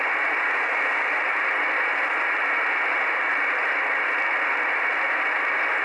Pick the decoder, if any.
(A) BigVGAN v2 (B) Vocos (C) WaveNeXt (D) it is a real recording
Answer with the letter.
D